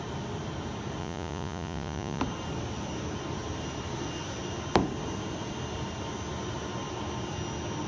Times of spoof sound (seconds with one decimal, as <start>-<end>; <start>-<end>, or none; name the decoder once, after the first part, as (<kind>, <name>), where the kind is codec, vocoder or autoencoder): 1.0-2.2 (vocoder, Vocos)